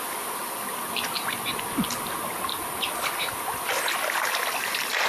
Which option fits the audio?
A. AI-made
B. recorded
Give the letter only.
B